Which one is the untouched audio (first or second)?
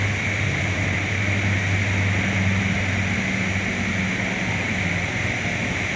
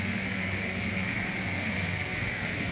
first